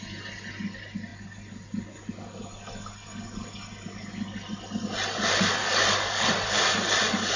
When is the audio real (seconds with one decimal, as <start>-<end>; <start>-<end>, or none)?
0.0-5.6; 6.3-7.4